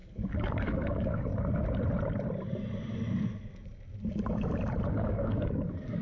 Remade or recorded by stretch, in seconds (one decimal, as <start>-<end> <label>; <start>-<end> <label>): 0.0-1.3 remade; 1.3-4.9 recorded; 4.9-6.0 remade